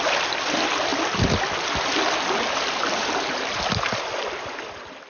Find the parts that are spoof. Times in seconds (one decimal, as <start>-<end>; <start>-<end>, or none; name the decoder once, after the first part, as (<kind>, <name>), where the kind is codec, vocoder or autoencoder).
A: none